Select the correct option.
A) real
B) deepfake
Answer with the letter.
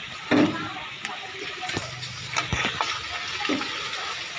A